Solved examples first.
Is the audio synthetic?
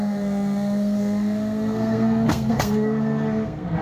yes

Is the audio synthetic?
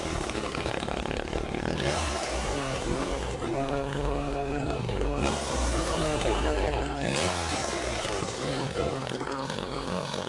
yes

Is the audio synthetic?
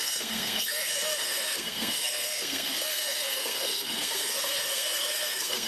yes